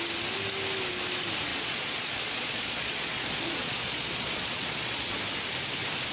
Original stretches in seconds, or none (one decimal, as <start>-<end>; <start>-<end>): 0.0-1.5; 5.2-6.1